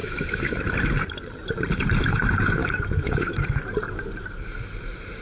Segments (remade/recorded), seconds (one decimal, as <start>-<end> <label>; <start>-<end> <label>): 0.0-0.6 remade; 0.6-2.6 recorded; 2.6-3.6 remade; 3.6-5.2 recorded